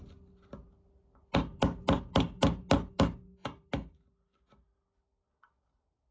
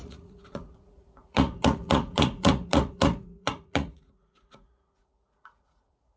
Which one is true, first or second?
first